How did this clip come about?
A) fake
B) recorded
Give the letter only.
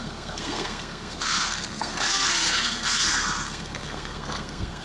A